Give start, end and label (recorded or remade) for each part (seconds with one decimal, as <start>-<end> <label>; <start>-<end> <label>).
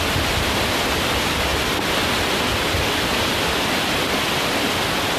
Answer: 0.0-5.2 recorded